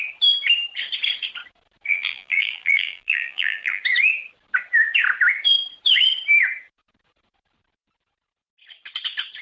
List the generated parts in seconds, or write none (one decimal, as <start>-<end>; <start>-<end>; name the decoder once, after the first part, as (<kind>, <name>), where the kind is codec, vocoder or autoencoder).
1.9-3.8 (vocoder, BigVGAN v2)